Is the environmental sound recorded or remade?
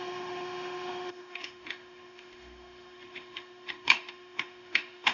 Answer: remade